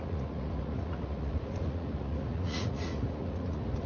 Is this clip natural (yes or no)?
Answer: no